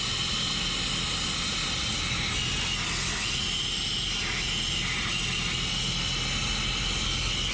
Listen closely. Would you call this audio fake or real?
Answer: real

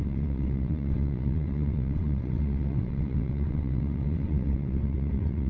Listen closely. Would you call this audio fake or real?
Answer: fake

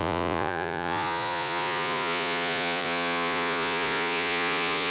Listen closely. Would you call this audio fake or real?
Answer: fake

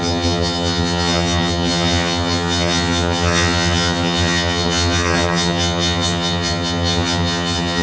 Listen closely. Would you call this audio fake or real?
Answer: fake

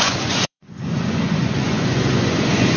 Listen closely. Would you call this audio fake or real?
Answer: fake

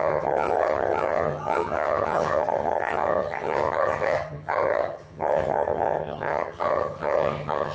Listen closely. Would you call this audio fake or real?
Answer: fake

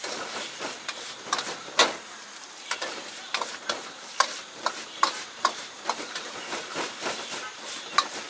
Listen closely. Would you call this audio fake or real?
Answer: fake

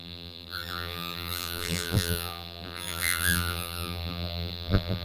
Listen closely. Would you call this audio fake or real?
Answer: fake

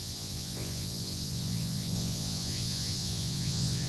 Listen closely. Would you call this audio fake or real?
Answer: fake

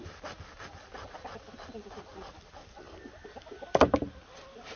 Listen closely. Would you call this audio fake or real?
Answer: real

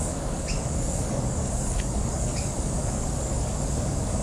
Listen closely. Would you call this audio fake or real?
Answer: fake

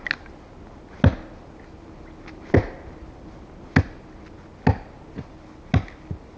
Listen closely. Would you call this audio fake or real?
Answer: real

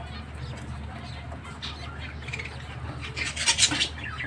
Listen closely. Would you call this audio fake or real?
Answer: real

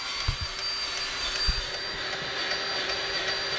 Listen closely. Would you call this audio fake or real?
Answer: real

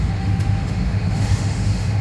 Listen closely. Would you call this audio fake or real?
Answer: fake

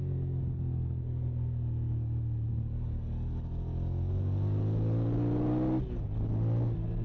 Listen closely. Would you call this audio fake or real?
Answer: real